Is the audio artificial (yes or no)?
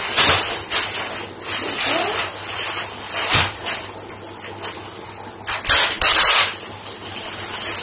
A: no